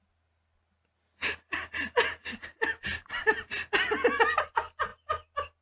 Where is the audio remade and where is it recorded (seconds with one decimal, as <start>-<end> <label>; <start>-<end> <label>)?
0.0-5.6 recorded